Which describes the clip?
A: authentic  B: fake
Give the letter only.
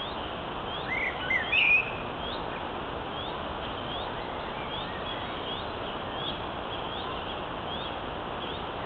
A